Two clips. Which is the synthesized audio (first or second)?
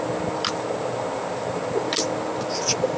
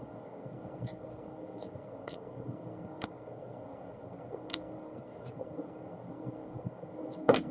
second